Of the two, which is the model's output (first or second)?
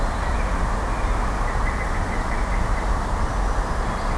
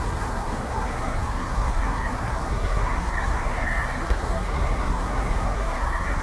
second